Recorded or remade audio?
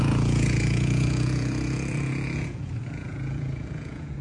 remade